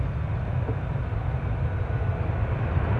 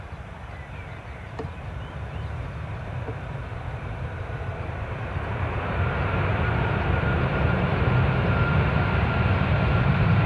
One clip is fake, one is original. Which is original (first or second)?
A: first